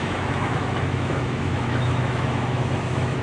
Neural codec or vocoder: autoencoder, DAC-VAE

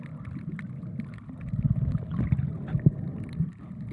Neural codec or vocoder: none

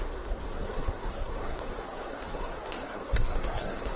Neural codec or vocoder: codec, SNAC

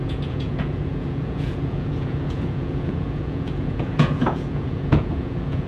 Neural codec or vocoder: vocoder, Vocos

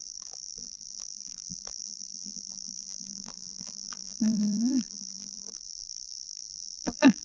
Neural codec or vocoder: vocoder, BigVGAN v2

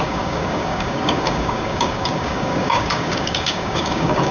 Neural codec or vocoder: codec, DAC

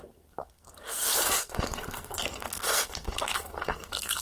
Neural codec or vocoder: codec, SNAC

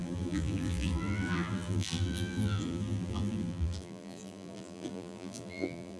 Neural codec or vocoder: vocoder, BigVGAN v2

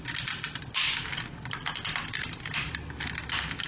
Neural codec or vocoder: none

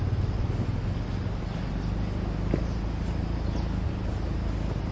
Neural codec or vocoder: none